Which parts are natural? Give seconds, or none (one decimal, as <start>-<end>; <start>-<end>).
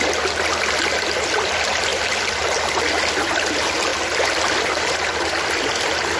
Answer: 0.0-6.2